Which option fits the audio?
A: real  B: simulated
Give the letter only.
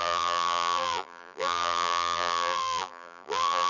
B